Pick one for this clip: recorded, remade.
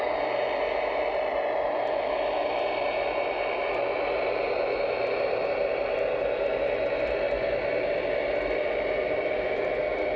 recorded